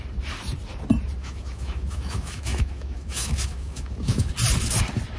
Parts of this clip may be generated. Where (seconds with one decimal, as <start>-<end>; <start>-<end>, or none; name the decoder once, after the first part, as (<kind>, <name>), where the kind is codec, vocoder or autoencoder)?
1.2-4.3 (autoencoder, DAC-VAE)